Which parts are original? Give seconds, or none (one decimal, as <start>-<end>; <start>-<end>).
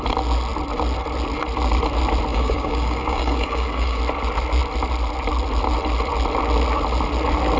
0.0-2.3; 4.0-7.6